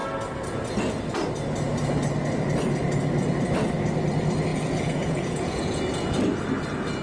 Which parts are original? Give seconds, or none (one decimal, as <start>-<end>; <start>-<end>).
0.0-4.5; 5.8-7.0